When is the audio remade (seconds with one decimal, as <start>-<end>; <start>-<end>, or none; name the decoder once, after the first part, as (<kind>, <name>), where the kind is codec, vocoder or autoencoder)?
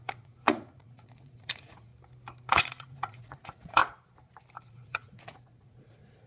0.0-1.9 (vocoder, Vocos); 2.5-3.8; 4.7-6.3